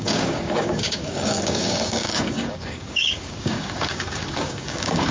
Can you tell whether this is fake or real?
fake